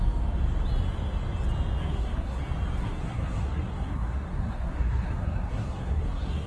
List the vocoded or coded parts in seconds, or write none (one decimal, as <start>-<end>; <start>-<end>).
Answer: 1.8-2.4; 2.8-6.5